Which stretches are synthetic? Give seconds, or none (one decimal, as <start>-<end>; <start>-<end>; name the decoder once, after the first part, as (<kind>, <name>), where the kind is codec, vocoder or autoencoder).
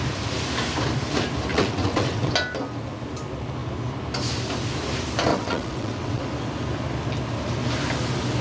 1.5-2.3 (vocoder, WaveNeXt); 5.3-6.2